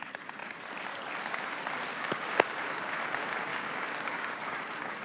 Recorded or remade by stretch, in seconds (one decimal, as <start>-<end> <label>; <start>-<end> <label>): 0.0-1.9 recorded; 1.9-3.0 remade; 3.0-3.5 recorded; 3.5-4.6 remade; 4.6-5.0 recorded